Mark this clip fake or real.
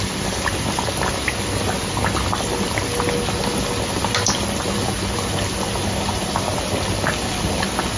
real